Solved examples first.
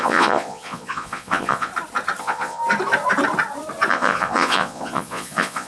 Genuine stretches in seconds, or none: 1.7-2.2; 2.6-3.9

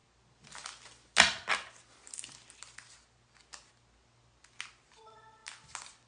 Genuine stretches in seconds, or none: 0.0-6.1

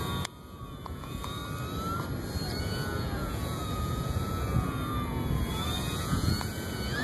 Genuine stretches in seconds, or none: 1.4-2.6